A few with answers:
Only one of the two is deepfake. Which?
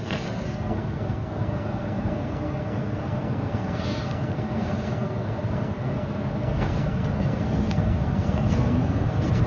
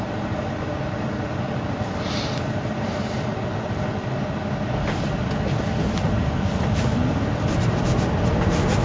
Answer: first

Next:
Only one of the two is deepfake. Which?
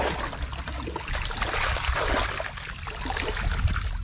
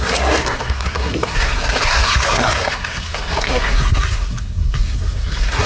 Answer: second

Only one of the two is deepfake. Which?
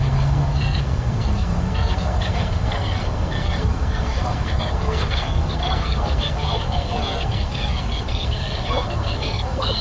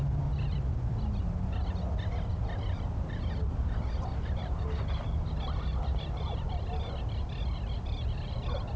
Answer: first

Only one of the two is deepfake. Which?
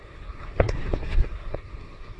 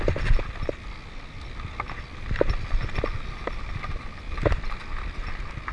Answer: first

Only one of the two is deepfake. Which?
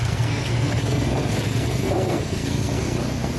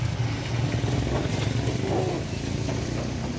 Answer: first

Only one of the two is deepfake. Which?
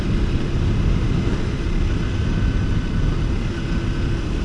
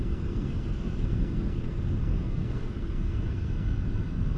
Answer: second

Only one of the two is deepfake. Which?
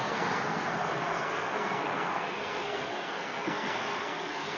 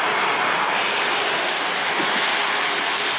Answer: first